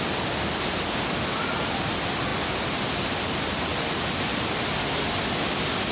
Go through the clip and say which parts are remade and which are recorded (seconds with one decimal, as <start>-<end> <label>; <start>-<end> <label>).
0.0-5.9 recorded